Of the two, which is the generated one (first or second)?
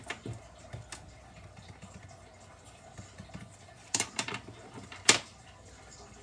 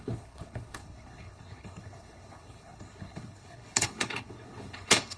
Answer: second